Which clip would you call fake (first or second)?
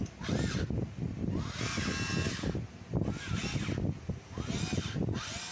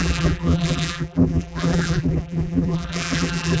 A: second